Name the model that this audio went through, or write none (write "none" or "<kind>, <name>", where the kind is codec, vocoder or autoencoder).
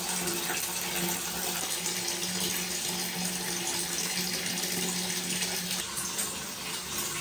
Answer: none